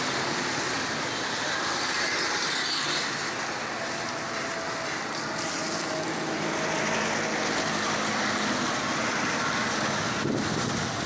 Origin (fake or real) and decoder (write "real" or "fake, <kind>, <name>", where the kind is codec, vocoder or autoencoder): real